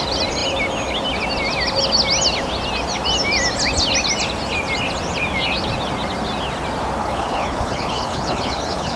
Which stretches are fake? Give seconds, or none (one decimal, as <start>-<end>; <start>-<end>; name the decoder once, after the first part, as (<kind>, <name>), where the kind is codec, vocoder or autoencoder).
7.0-9.0 (codec, HILCodec)